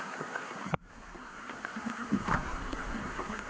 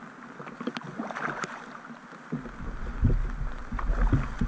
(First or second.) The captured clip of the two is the second